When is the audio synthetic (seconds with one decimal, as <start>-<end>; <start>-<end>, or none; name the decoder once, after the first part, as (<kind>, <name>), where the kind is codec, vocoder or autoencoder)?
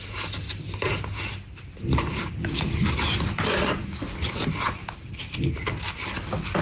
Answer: none